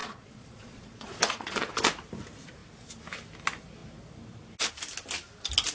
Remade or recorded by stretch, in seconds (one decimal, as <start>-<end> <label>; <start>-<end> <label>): 0.0-1.8 remade; 1.8-5.7 recorded